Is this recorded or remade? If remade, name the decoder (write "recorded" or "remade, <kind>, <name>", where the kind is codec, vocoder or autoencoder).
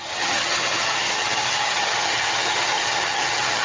remade, vocoder, HiFi-GAN